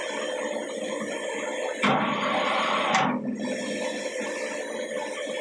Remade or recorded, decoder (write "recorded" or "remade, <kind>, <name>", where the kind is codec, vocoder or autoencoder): recorded